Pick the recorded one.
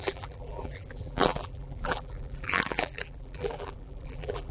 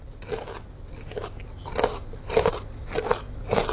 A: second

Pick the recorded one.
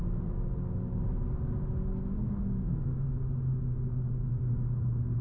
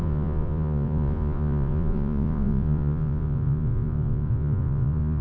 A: first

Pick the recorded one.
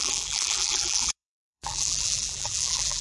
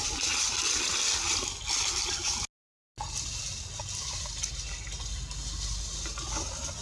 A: second